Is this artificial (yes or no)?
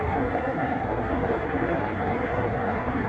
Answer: yes